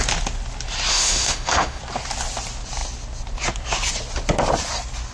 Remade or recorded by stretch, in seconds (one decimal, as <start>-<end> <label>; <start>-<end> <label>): 0.0-0.9 recorded; 0.9-1.8 remade; 1.8-5.1 recorded